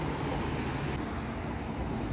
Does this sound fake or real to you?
real